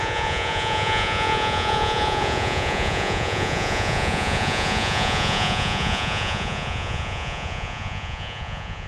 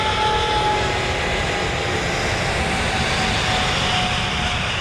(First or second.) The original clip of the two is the second